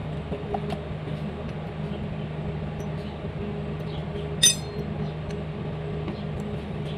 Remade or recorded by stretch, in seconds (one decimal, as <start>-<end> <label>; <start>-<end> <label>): 0.0-7.0 recorded